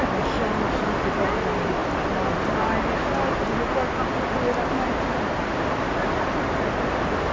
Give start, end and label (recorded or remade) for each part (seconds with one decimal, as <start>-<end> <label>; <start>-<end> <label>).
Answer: 0.0-1.8 recorded; 1.8-2.8 remade; 2.8-7.3 recorded